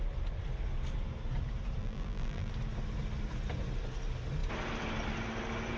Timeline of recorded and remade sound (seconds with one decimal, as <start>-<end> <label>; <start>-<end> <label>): 0.0-1.8 recorded; 1.8-2.5 remade; 2.5-5.8 recorded